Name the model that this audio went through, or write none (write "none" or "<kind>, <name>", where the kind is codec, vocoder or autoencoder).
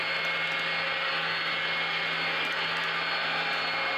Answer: none